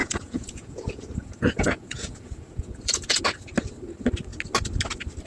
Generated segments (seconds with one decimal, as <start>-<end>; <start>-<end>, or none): 0.0-3.2